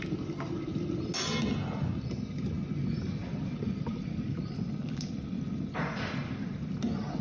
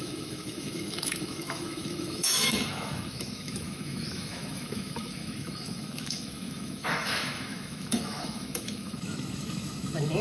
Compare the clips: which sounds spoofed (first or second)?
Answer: second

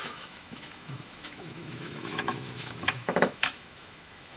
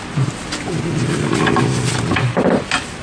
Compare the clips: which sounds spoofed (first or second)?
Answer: first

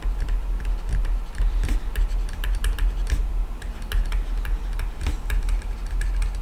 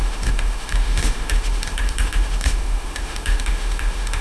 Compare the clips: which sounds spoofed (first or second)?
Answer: second